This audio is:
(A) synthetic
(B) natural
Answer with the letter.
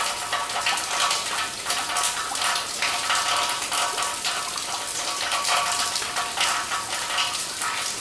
B